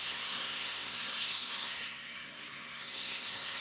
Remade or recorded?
remade